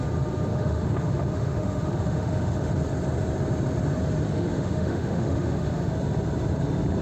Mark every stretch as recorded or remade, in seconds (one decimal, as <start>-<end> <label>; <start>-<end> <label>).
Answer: 0.0-0.5 recorded; 0.5-2.7 remade; 2.7-4.3 recorded; 4.3-5.9 remade; 5.9-7.0 recorded